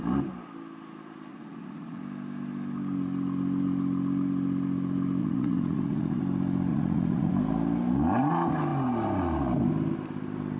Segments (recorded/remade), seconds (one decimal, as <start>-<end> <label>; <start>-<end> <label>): 0.0-1.3 recorded; 1.3-2.0 remade; 2.0-5.2 recorded; 5.2-6.2 remade; 6.2-6.7 recorded; 6.7-7.3 remade; 7.3-10.6 recorded